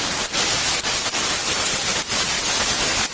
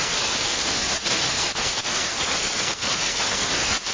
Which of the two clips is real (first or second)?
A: first